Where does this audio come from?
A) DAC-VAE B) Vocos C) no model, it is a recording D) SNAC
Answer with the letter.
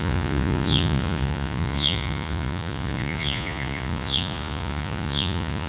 B